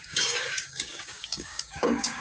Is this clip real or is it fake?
fake